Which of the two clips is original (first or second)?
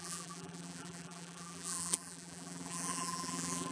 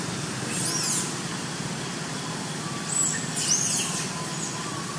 second